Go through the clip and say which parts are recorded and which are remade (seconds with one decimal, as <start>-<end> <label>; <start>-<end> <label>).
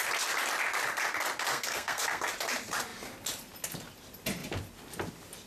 0.0-1.5 recorded; 1.5-2.3 remade; 2.3-5.5 recorded